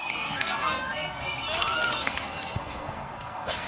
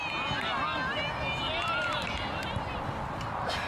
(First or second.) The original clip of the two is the second